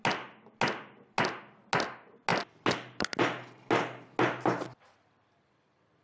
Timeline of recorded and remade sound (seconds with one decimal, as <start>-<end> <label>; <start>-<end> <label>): 0.0-6.0 recorded